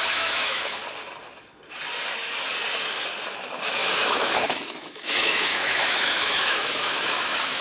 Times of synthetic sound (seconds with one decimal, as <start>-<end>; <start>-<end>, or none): 0.0-0.8; 3.3-7.6